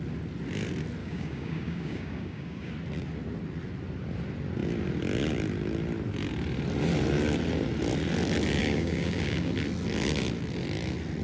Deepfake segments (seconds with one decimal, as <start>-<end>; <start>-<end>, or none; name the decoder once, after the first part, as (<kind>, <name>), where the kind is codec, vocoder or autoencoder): 1.0-2.7 (codec, DAC); 8.6-9.5